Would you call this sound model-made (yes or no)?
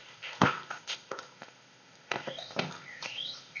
yes